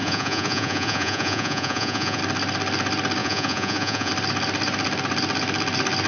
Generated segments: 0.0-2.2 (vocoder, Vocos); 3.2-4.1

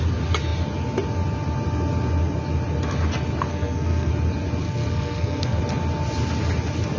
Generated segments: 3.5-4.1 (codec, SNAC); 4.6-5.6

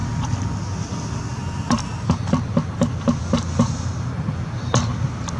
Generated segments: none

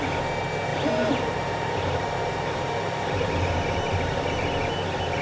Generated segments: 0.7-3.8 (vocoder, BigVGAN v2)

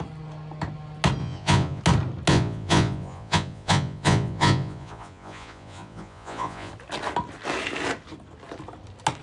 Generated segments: 1.2-1.8 (vocoder, Vocos); 2.3-6.7